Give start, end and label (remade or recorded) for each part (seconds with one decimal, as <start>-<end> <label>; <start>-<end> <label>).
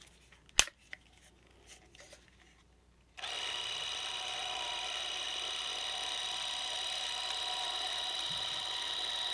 0.0-4.4 recorded; 4.4-5.0 remade; 5.0-9.3 recorded